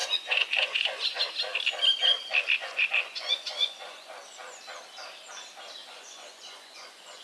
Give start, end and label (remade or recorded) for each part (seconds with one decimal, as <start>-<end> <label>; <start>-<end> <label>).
0.0-1.2 remade; 1.2-2.6 recorded; 2.6-4.1 remade; 4.1-5.8 recorded; 5.8-7.2 remade